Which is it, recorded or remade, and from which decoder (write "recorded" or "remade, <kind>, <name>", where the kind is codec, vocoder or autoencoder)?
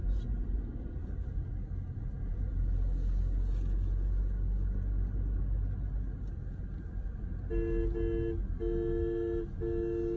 recorded